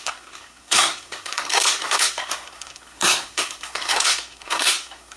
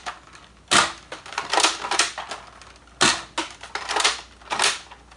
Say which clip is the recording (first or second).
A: second